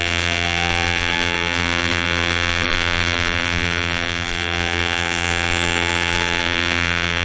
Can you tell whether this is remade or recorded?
remade